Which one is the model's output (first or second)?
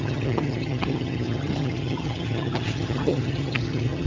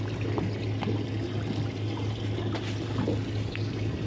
first